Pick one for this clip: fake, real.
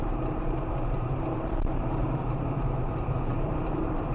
fake